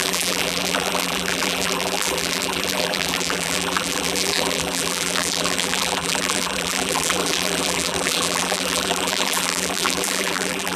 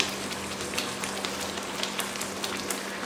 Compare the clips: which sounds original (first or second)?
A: second